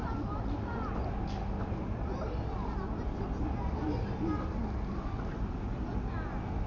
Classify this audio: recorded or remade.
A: recorded